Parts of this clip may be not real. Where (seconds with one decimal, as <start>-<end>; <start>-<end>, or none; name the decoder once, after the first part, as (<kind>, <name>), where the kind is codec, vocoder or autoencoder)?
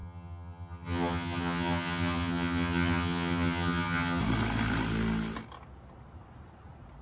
0.0-4.2 (vocoder, HiFi-GAN)